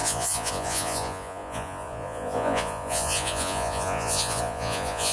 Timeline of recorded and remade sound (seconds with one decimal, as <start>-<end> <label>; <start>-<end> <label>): 0.0-5.1 remade